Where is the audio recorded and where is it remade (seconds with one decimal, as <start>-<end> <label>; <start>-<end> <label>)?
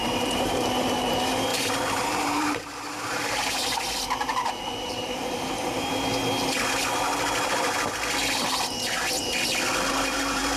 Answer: 0.0-6.2 remade; 6.2-9.9 recorded; 9.9-10.6 remade